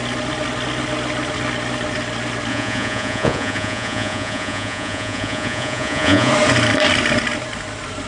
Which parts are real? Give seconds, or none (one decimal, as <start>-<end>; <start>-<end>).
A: 0.0-2.5; 6.3-8.1